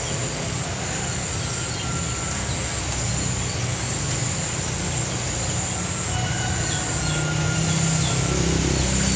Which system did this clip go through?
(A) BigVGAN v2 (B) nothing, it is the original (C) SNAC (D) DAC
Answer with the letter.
B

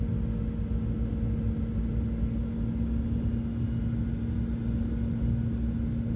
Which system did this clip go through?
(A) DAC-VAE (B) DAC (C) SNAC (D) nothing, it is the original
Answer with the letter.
D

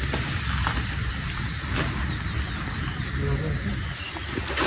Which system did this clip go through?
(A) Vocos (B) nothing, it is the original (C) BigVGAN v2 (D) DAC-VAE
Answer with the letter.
B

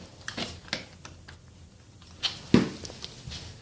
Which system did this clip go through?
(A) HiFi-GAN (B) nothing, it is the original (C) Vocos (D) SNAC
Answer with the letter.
B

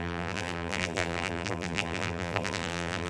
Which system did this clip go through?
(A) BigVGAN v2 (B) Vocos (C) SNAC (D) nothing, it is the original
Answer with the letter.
A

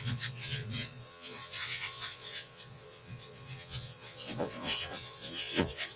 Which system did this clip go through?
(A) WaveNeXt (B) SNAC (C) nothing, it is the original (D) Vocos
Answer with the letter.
D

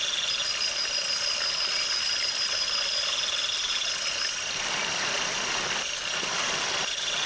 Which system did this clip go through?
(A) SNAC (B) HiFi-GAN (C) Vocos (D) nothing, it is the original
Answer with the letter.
D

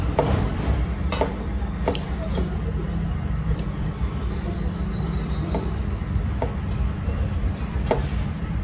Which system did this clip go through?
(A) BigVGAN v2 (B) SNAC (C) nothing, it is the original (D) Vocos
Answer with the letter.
A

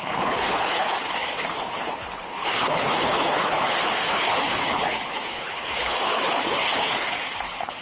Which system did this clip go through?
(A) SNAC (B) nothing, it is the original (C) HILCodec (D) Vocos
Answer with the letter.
C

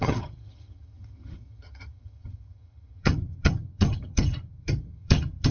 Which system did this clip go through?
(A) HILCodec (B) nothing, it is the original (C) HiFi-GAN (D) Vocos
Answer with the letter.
C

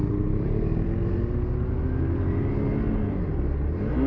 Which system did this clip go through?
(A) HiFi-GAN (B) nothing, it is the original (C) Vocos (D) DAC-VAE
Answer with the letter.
B